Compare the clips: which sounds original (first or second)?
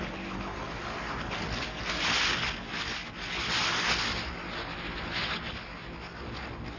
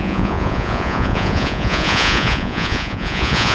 first